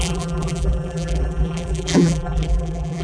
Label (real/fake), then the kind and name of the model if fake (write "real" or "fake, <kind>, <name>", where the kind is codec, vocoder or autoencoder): fake, vocoder, BigVGAN v2